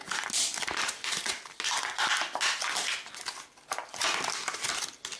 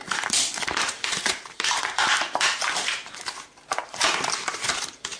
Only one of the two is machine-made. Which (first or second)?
second